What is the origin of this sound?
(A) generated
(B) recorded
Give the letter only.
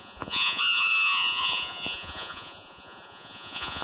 A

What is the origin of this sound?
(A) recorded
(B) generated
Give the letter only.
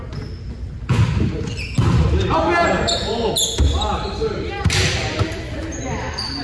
A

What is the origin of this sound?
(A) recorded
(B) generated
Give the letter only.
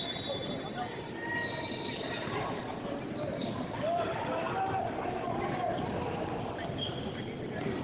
A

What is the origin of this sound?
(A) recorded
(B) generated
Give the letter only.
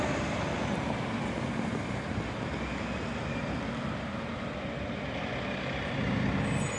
A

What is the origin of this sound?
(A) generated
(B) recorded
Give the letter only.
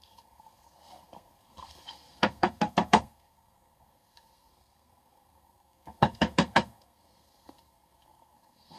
A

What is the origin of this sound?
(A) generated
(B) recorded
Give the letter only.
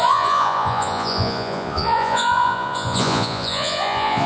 A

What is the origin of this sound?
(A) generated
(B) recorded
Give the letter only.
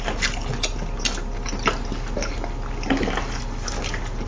B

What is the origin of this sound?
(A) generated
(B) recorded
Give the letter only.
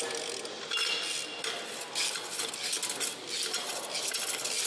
B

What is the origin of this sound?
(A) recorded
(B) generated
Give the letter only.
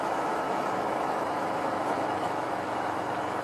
B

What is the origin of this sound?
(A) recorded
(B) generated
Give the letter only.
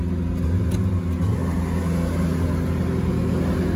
A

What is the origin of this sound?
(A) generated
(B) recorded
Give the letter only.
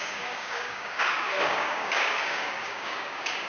A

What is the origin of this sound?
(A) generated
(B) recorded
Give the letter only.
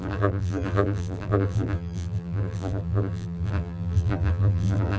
A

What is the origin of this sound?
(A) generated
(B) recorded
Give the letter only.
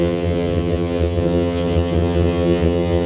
A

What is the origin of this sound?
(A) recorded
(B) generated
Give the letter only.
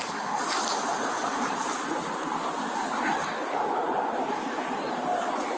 A